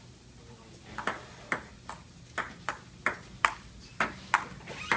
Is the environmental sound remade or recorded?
recorded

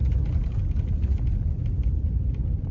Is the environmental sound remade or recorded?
recorded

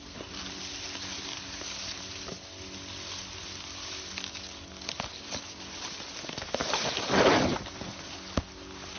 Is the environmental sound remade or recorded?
recorded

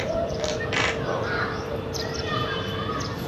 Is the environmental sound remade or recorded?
remade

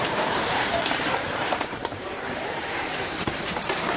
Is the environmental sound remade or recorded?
remade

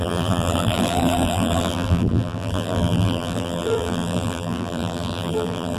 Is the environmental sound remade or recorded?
remade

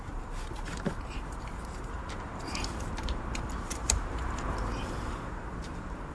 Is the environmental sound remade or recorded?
remade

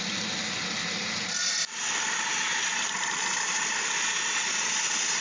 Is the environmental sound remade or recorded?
recorded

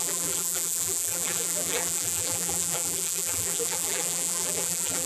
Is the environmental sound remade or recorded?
remade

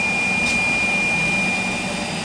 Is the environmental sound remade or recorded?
recorded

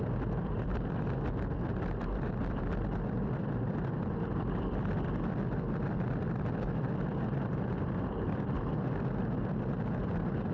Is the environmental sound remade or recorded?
remade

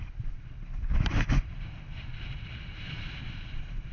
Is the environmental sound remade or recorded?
remade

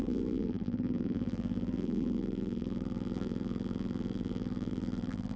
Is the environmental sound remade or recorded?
remade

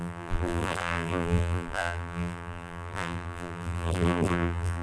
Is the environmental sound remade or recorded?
remade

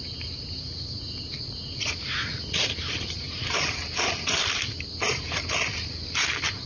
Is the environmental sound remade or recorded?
recorded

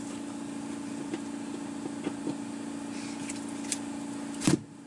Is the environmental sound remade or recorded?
recorded